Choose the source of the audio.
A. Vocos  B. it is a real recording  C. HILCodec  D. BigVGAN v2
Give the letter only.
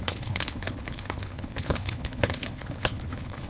C